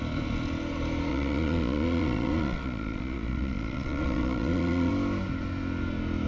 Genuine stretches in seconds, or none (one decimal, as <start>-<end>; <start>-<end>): 0.0-1.1; 4.9-6.3